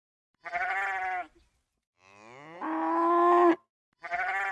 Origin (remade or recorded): recorded